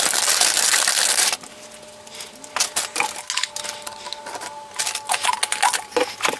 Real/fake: real